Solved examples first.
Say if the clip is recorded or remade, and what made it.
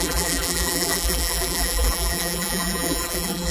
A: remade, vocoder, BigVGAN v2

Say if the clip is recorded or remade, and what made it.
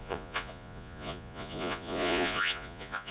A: remade, vocoder, Vocos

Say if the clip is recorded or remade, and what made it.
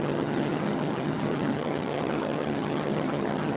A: remade, vocoder, HiFi-GAN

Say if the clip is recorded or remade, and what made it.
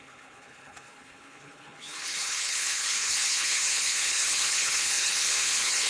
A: remade, codec, HILCodec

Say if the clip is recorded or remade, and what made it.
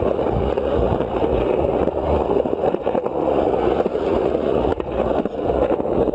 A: remade, vocoder, Vocos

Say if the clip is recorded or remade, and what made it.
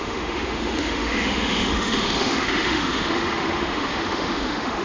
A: remade, autoencoder, DAC-VAE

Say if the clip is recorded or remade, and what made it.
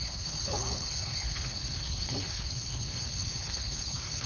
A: remade, codec, HILCodec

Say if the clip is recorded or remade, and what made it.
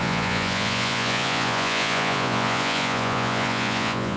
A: remade, vocoder, Vocos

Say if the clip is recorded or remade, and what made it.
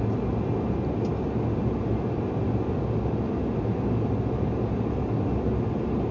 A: recorded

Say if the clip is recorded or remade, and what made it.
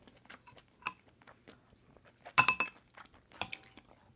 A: recorded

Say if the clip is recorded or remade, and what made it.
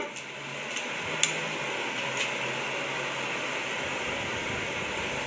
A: recorded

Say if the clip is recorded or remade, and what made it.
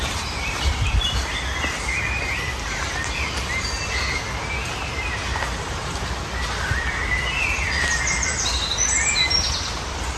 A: recorded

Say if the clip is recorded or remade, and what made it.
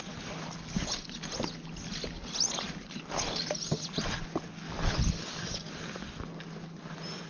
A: recorded